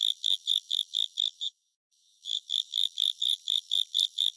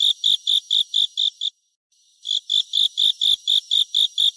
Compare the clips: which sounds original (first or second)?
second